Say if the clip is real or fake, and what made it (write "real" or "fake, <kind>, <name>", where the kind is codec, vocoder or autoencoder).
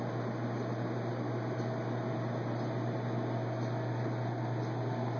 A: real